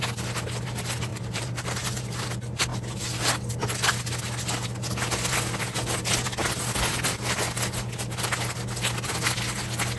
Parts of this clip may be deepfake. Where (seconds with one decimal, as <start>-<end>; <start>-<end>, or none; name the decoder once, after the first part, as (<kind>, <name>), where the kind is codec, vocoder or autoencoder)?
1.1-2.1 (vocoder, BigVGAN v2)